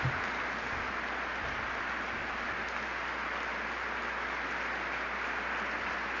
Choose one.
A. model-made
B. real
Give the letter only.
B